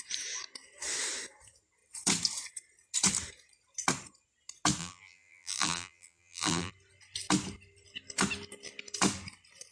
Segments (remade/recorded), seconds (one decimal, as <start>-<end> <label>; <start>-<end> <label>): 0.0-4.8 recorded; 4.8-6.7 remade; 6.7-9.7 recorded